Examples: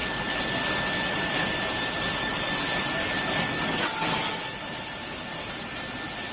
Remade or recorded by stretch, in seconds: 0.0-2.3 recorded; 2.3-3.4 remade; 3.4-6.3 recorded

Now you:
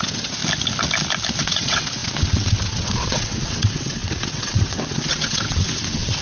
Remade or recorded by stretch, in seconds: 0.0-0.4 remade; 0.4-1.4 recorded; 1.4-6.2 remade

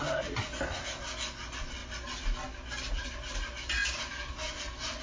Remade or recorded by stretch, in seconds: 0.0-5.0 recorded

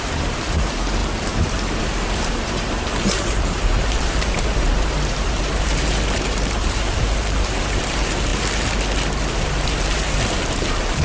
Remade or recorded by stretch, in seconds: 0.0-1.0 remade; 1.0-1.8 recorded; 1.8-8.3 remade; 8.3-9.3 recorded; 9.3-11.0 remade

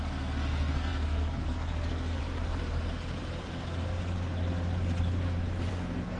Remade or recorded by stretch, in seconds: 0.0-2.2 remade; 2.2-5.7 recorded; 5.7-6.2 remade

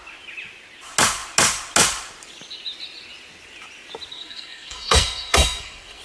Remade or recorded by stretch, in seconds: 0.0-4.1 recorded; 4.1-6.0 remade

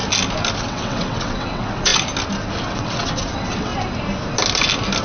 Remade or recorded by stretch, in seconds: 0.0-0.6 recorded; 0.6-1.9 remade; 1.9-2.7 recorded; 2.7-3.7 remade; 3.7-5.0 recorded